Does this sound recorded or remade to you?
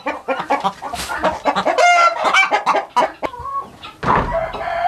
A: recorded